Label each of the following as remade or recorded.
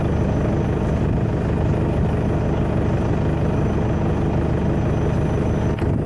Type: recorded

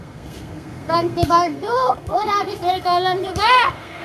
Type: remade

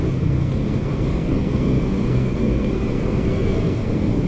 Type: remade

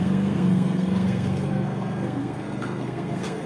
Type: remade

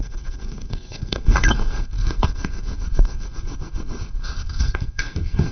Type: remade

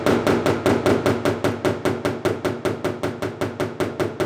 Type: recorded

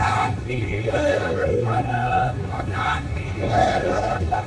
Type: remade